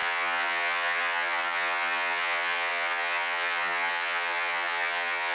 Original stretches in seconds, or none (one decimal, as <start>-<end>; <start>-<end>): none